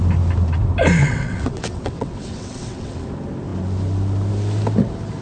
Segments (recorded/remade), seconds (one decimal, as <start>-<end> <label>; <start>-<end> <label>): 0.0-1.0 recorded; 1.0-3.0 remade; 3.0-5.2 recorded